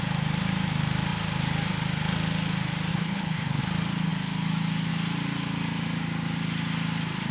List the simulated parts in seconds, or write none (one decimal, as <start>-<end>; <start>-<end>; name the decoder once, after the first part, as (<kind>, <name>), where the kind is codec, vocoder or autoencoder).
2.9-3.6 (codec, HILCodec)